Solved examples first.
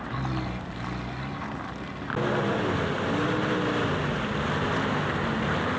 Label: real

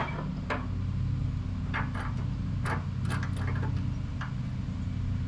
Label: real